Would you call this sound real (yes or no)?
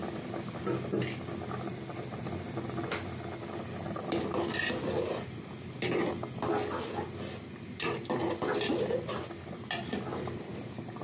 yes